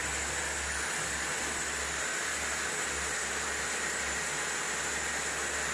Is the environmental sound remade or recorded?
recorded